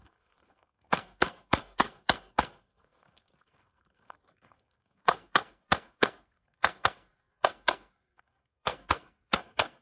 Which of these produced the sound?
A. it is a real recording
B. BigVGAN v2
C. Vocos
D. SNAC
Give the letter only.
D